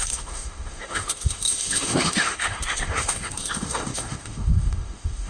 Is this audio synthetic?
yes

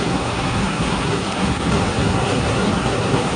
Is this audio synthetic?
yes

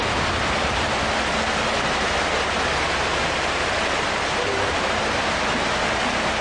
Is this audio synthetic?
no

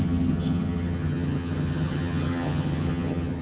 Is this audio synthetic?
yes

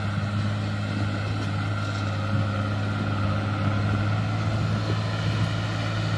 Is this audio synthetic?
no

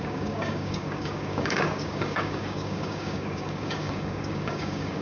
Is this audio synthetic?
yes